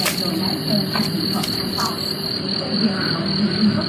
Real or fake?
fake